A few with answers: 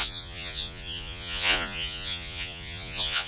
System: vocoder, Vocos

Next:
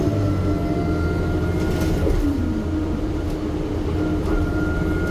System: none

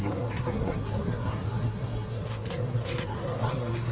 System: codec, SNAC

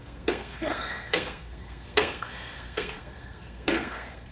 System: codec, SNAC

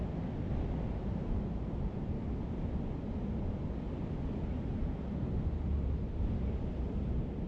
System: none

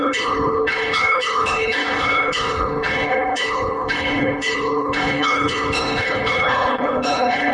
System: codec, HILCodec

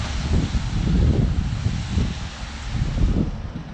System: none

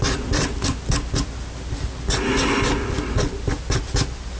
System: none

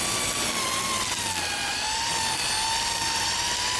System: none